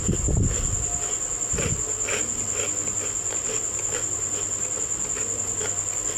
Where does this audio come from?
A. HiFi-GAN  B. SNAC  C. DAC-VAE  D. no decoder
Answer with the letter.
D